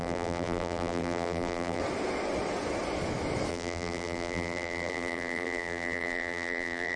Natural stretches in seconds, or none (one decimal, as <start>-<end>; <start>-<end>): 1.8-3.5